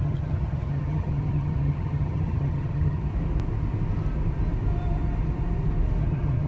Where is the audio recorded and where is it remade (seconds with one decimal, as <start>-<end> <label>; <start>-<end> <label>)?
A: 0.0-3.1 remade; 3.1-6.0 recorded; 6.0-6.5 remade